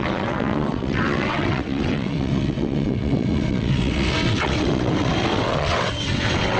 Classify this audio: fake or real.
fake